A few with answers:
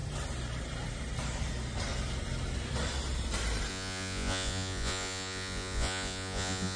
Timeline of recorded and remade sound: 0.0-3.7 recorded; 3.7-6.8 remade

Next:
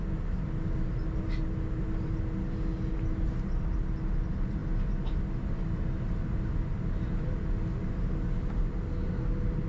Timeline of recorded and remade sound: 0.0-9.7 recorded